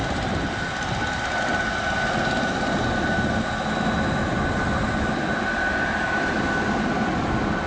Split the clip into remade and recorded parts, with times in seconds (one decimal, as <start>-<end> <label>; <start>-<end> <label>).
0.0-7.7 recorded